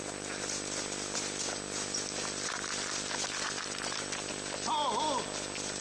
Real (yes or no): yes